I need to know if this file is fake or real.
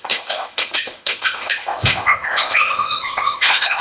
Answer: fake